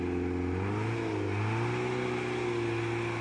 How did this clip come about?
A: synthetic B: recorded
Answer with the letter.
B